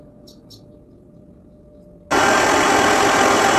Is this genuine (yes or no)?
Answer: yes